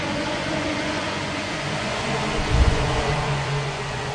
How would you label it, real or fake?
fake